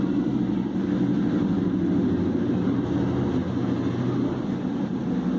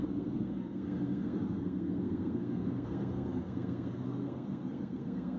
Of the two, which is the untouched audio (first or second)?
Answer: first